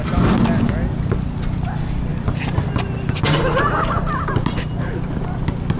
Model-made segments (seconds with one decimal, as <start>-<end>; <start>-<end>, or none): none